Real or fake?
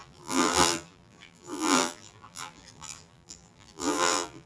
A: fake